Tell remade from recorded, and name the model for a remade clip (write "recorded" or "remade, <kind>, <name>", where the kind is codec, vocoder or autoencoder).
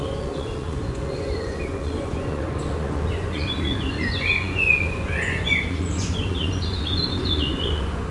remade, vocoder, Vocos